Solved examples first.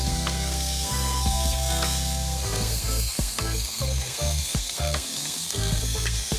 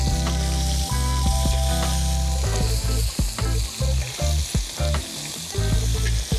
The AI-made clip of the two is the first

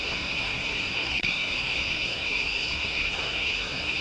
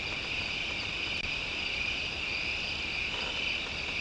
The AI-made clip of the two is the first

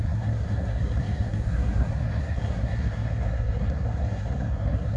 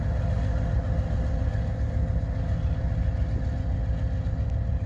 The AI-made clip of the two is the first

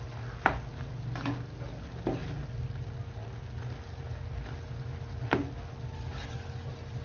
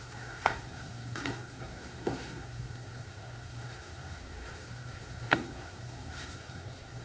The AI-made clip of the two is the second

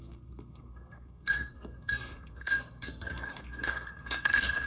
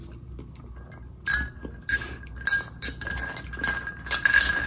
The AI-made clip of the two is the first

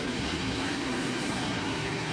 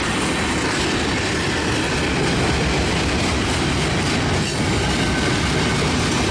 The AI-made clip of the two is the first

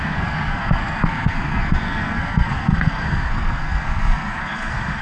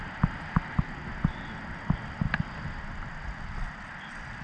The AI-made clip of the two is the first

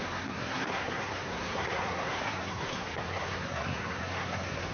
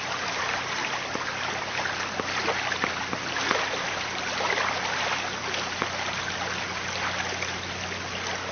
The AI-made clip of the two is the first